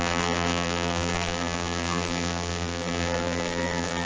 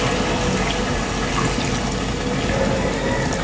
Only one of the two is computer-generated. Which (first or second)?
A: first